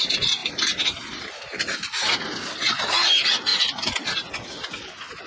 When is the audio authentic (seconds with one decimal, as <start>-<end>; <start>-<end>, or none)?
0.0-0.4; 1.7-5.3